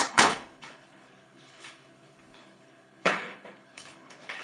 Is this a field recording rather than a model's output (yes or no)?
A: no